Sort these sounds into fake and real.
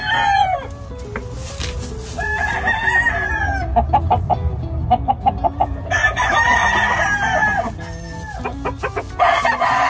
real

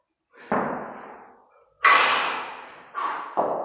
real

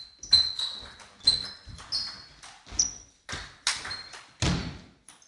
real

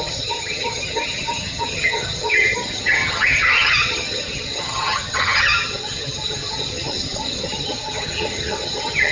fake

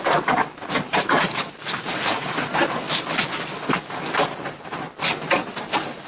real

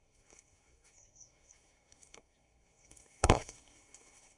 fake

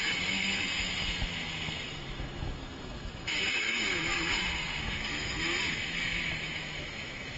fake